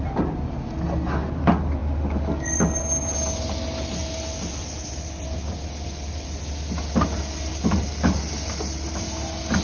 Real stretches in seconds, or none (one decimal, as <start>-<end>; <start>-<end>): 0.0-9.6